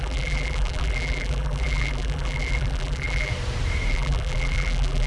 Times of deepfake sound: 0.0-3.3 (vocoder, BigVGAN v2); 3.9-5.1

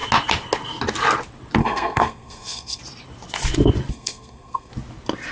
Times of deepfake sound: 1.6-2.8 (codec, SNAC); 3.9-4.7

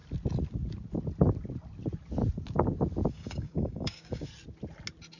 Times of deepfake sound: 3.1-4.3 (codec, DAC)

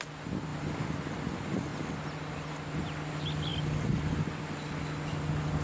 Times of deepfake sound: none

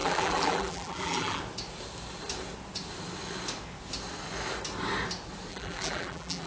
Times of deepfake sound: 0.0-1.4 (vocoder, BigVGAN v2); 5.5-6.5